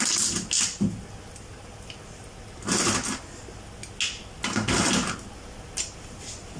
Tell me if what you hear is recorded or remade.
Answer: recorded